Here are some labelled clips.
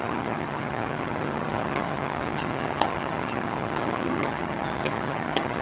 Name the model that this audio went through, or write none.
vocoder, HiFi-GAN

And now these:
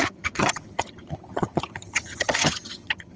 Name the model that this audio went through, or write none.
vocoder, HiFi-GAN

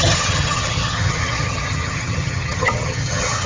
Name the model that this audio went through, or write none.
vocoder, HiFi-GAN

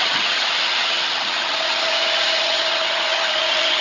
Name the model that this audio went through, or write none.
vocoder, HiFi-GAN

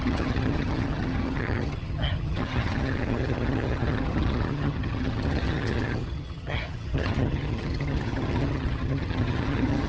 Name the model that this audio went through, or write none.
vocoder, HiFi-GAN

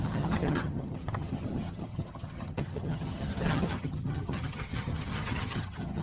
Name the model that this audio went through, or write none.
vocoder, HiFi-GAN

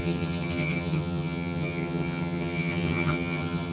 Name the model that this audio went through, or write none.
vocoder, HiFi-GAN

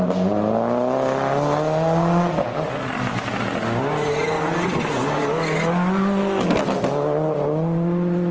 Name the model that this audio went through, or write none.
none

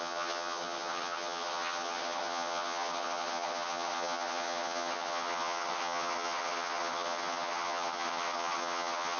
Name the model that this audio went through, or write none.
vocoder, HiFi-GAN